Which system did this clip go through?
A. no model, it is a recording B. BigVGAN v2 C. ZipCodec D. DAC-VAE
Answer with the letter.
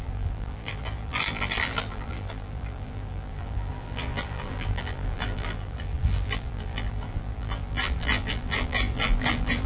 B